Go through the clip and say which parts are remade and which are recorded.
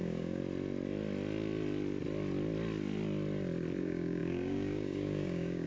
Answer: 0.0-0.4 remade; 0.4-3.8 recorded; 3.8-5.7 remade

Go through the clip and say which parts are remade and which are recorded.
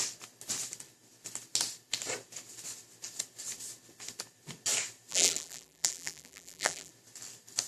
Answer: 0.0-5.1 recorded; 5.1-6.9 remade; 6.9-7.7 recorded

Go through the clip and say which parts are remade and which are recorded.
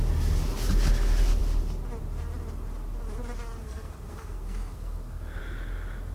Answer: 0.0-3.6 recorded; 3.6-5.4 remade; 5.4-6.1 recorded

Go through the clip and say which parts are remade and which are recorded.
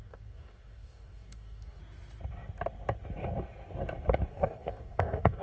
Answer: 0.0-1.8 remade; 1.8-4.3 recorded; 4.3-5.4 remade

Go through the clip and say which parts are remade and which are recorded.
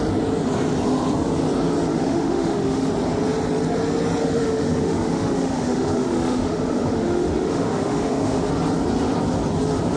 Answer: 0.0-1.9 recorded; 1.9-2.9 remade; 2.9-4.2 recorded; 4.2-8.5 remade; 8.5-10.0 recorded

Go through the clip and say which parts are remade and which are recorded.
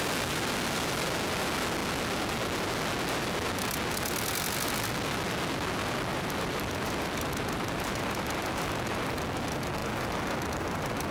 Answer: 0.0-6.1 recorded; 6.1-8.7 remade; 8.7-11.1 recorded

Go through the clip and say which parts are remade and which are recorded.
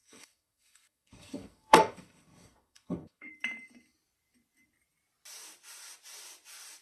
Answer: 0.0-3.3 remade; 3.3-6.8 recorded